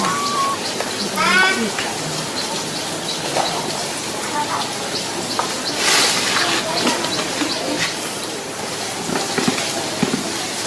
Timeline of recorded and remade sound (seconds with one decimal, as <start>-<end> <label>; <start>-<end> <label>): 0.0-3.8 recorded; 3.8-4.3 remade; 4.3-10.7 recorded